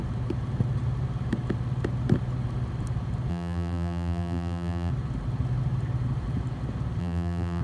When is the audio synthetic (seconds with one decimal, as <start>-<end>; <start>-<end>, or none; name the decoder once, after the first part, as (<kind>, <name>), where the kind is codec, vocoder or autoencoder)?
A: 3.3-4.9 (vocoder, BigVGAN v2); 7.0-7.6